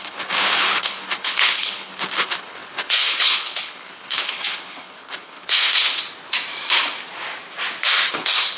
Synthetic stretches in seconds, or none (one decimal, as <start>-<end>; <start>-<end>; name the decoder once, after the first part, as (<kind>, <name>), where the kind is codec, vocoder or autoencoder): 0.0-6.0 (codec, HILCodec); 8.1-8.6